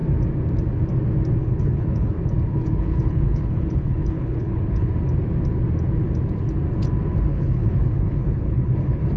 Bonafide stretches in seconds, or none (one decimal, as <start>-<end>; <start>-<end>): 0.0-1.4; 2.1-2.5; 4.9-7.3